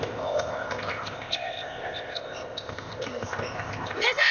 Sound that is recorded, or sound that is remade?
remade